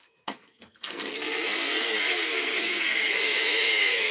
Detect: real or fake fake